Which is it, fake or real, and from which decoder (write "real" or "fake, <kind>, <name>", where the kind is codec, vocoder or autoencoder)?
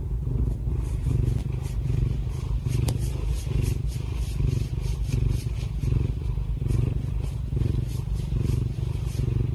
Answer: real